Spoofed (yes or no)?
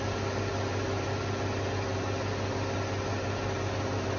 no